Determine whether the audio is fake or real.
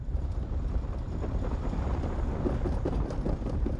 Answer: real